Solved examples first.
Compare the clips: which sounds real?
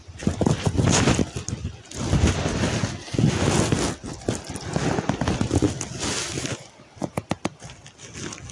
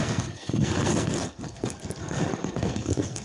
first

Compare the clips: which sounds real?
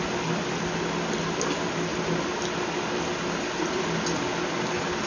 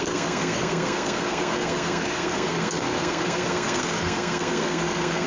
first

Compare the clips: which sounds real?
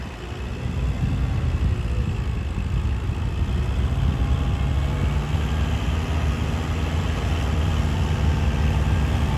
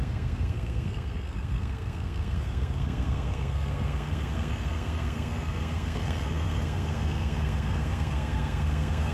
first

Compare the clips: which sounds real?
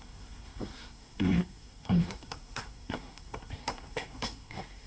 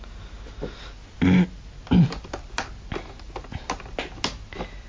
second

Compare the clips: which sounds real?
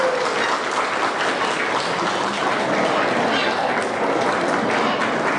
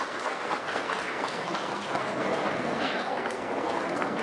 first